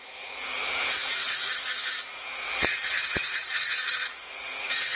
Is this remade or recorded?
remade